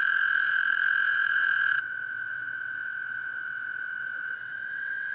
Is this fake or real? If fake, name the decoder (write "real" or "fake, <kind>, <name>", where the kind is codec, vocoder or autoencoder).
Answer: fake, vocoder, WaveNeXt